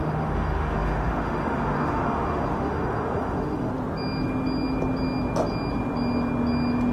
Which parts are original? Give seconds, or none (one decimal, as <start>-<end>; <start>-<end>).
3.7-6.9